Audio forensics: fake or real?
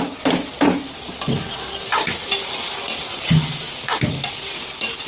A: real